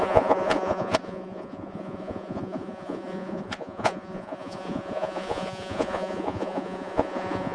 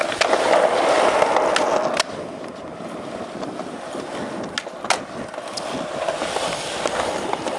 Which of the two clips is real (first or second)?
second